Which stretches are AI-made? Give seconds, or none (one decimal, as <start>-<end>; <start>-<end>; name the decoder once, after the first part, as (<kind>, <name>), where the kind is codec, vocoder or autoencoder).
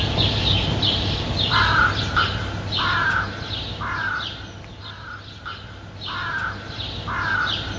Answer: none